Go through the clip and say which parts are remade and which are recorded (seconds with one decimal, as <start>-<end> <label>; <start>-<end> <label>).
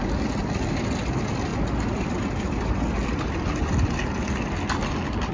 0.0-5.3 recorded